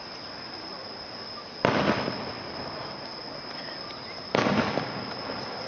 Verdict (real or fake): real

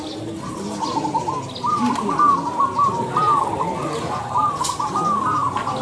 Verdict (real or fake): real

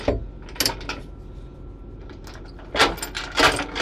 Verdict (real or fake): real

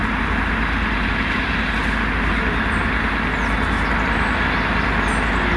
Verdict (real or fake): real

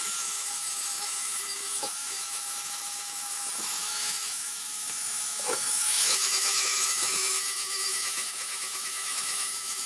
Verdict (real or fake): fake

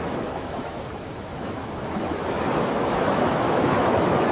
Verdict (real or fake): fake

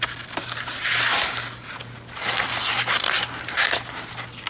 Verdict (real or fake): real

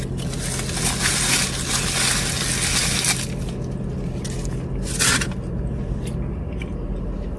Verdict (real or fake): real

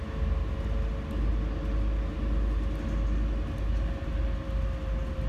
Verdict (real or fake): real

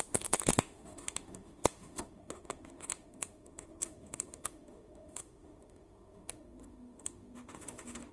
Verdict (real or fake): fake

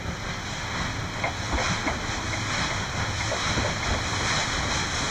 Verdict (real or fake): real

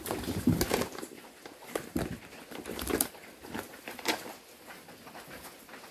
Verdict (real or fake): real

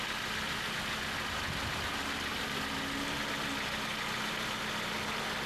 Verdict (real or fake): real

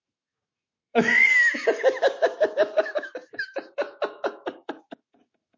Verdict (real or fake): fake